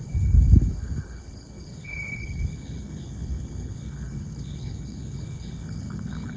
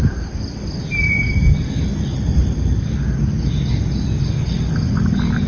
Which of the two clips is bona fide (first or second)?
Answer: second